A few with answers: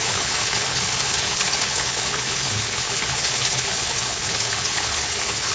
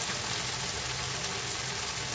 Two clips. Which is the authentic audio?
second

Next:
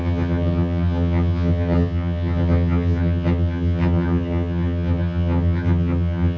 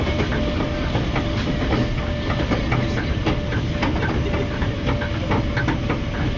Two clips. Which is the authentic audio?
second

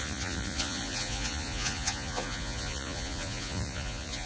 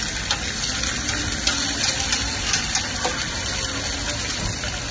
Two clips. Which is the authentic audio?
second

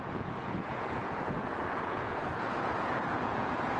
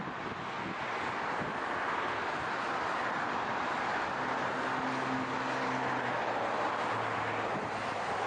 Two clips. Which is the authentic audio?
second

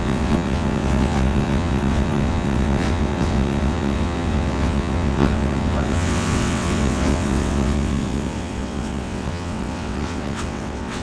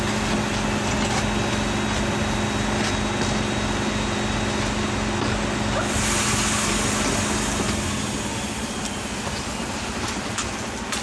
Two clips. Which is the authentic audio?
second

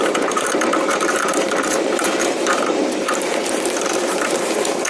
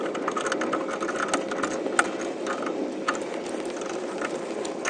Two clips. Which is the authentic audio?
second